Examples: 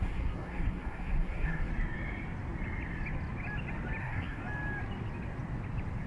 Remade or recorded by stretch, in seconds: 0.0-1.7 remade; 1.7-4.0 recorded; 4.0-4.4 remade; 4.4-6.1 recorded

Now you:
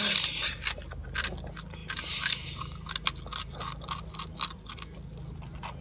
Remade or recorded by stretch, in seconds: 0.0-5.8 recorded

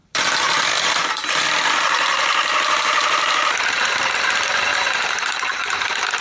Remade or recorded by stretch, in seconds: 0.0-6.2 recorded

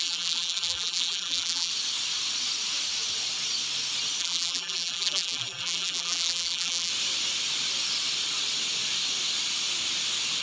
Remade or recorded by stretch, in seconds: 0.0-1.7 remade; 1.7-4.2 recorded; 4.2-6.9 remade; 6.9-10.4 recorded

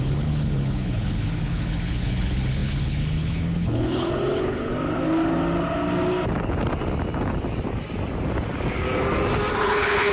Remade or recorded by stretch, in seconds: 0.0-4.7 remade; 4.7-9.6 recorded; 9.6-10.1 remade

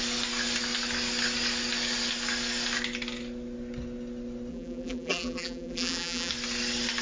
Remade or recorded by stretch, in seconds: 0.0-4.5 recorded; 4.5-6.3 remade; 6.3-7.0 recorded